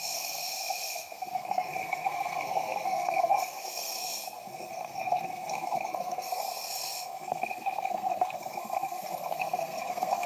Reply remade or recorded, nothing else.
remade